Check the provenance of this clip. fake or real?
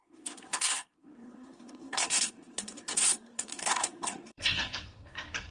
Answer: fake